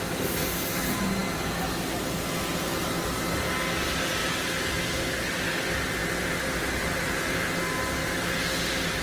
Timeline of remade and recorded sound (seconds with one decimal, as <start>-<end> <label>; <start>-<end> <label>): 0.0-9.0 recorded